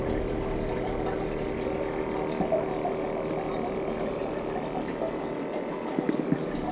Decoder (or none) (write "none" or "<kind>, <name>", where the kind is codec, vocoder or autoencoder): none